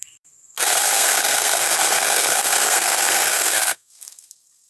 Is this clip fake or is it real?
fake